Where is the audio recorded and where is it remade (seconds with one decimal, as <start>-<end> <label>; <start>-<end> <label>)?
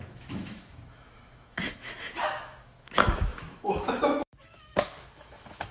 0.0-5.7 remade